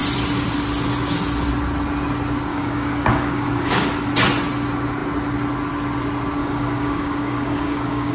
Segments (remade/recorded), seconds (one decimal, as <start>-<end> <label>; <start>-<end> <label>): 0.0-2.5 recorded; 2.5-3.9 remade; 3.9-6.4 recorded; 6.4-8.1 remade

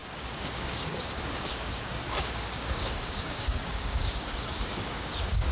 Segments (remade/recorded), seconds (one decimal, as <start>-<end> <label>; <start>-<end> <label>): 0.0-5.5 remade

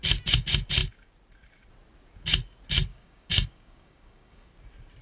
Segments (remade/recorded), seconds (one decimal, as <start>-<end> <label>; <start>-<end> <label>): 0.0-2.9 recorded; 2.9-4.5 remade; 4.5-5.0 recorded

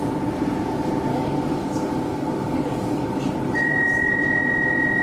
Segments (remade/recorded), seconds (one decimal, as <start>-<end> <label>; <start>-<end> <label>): 0.0-1.1 recorded; 1.1-4.1 remade; 4.1-5.0 recorded

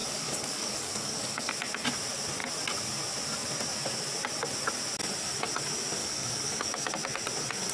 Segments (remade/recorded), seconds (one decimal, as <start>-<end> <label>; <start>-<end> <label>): 0.0-1.5 remade; 1.5-6.0 recorded; 6.0-6.9 remade; 6.9-7.7 recorded